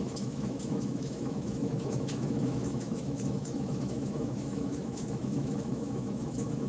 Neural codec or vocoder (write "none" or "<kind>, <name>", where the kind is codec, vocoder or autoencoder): autoencoder, DAC-VAE